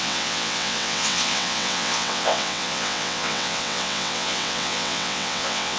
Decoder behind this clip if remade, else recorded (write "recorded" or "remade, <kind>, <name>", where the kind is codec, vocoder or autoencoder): remade, vocoder, WaveNeXt